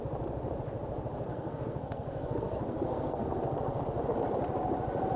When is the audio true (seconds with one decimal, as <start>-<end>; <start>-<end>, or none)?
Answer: 0.0-1.3; 3.8-5.2